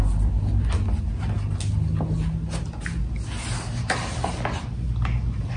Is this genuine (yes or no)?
yes